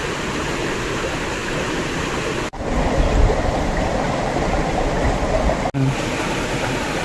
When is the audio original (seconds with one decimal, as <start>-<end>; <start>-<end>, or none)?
0.0-7.0